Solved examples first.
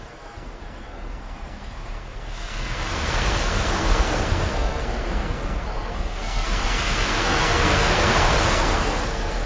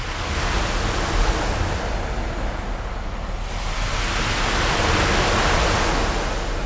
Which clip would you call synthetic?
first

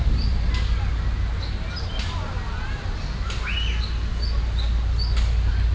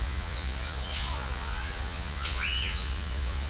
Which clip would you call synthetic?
second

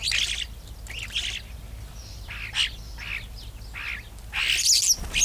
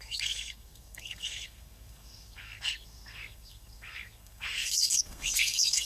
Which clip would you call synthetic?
second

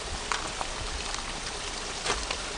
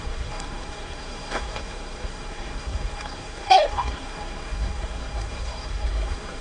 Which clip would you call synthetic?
second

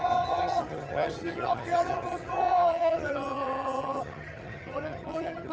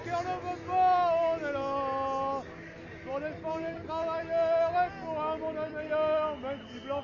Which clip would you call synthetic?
first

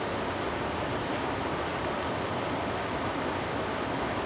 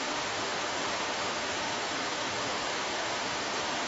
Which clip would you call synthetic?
second